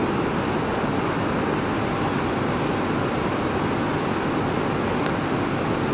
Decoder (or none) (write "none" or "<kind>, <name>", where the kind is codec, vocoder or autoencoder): none